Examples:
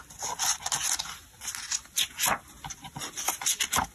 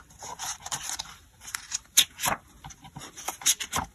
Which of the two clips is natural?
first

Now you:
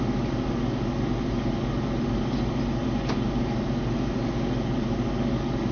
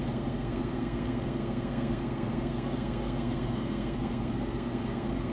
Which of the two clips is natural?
first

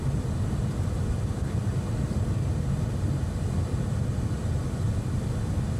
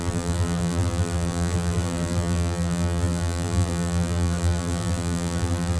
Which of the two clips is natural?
first